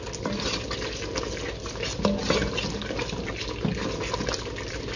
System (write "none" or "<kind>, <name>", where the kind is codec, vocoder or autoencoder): none